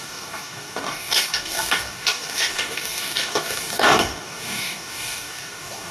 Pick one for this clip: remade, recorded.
remade